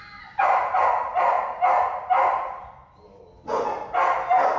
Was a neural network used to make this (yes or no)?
no